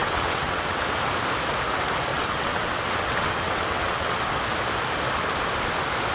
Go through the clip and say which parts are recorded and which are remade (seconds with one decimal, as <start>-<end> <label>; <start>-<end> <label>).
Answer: 0.0-0.8 remade; 0.8-2.1 recorded; 2.1-4.2 remade; 4.2-6.1 recorded